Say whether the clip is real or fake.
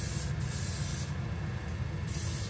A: real